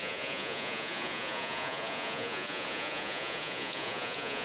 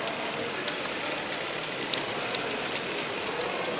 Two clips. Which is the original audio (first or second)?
second